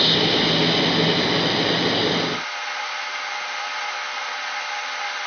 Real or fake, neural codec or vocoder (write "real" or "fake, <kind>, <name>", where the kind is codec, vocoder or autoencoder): real